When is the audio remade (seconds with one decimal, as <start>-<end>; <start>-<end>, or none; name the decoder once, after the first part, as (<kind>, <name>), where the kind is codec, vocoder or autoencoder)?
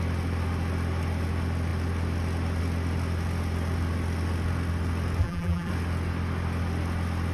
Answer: 5.2-5.7 (vocoder, BigVGAN v2)